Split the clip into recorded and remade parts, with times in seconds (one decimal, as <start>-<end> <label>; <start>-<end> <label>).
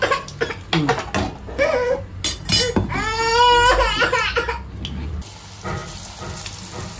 0.0-7.0 recorded